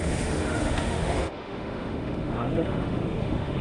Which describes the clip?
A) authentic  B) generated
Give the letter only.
B